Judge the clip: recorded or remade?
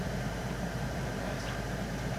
remade